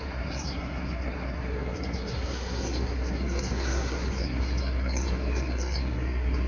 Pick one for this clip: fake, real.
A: fake